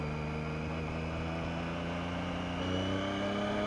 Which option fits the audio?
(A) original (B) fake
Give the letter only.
A